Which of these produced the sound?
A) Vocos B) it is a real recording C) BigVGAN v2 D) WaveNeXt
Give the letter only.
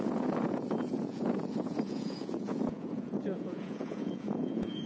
A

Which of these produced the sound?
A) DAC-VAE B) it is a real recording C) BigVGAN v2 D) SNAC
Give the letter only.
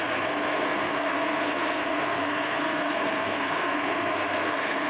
D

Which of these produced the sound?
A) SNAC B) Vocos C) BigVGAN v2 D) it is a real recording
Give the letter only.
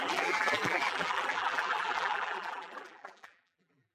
C